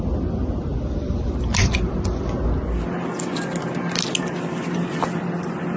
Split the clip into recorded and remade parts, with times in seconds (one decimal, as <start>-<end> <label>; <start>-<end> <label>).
0.0-5.8 recorded